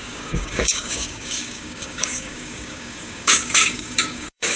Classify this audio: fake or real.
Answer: fake